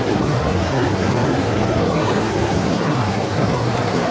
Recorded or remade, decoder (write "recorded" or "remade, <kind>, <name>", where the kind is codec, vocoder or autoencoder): remade, codec, SNAC